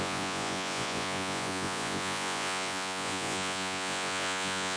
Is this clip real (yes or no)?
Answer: no